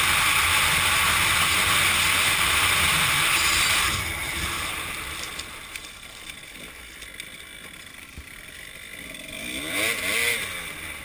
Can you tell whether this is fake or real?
real